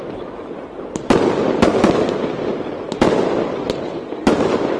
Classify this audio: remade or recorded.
recorded